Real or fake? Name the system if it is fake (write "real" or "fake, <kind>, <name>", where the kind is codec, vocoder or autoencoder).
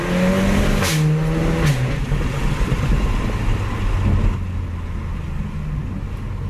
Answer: real